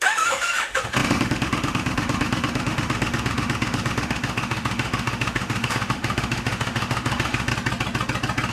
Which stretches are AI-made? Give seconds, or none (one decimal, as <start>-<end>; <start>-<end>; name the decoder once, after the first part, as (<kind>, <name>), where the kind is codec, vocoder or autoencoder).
0.0-7.5 (autoencoder, DAC-VAE)